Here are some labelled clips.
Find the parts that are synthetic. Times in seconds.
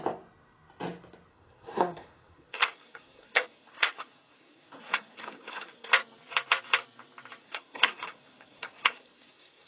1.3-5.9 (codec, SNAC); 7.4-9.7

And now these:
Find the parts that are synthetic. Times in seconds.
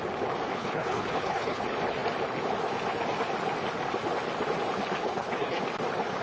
0.6-1.6 (codec, HILCodec); 5.1-5.6